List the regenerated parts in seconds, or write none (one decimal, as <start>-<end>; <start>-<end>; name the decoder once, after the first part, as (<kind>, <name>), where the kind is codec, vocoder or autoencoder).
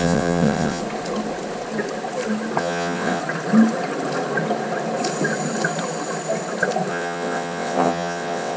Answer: 0.0-0.8 (vocoder, WaveNeXt); 2.6-3.2; 6.9-8.6